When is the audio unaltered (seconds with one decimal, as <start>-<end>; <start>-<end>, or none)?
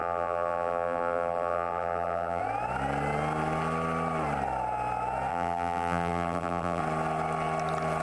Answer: 2.4-5.3; 6.8-8.0